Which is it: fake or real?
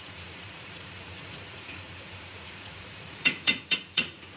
fake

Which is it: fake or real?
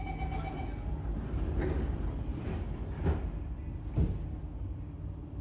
real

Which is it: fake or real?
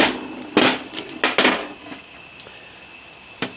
real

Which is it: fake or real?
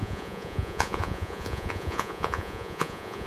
fake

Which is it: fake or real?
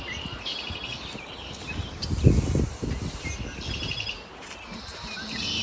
real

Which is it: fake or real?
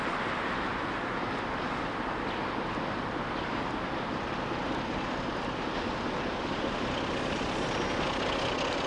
real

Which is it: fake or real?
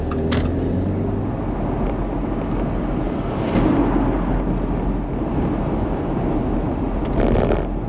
real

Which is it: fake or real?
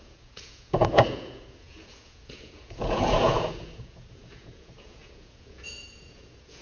fake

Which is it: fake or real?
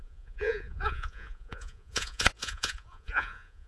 fake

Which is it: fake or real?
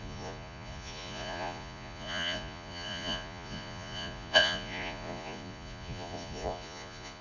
fake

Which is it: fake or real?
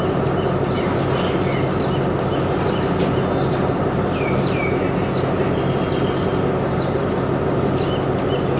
real